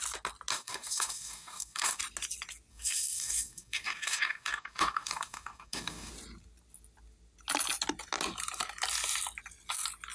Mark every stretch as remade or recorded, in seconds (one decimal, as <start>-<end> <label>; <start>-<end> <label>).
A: 0.0-0.5 recorded; 0.5-2.0 remade; 2.0-2.7 recorded; 2.7-6.1 remade; 6.1-10.1 recorded